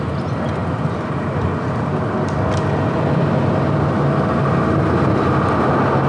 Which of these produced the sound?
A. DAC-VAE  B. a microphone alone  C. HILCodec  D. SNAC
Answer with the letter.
B